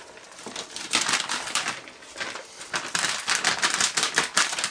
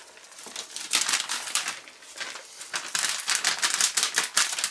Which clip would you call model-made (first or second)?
first